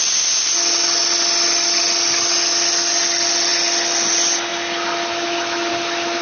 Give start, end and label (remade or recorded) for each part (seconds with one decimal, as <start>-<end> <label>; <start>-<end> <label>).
0.0-6.2 recorded